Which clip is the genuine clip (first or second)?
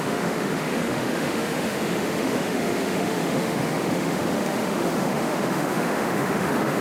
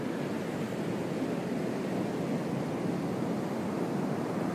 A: second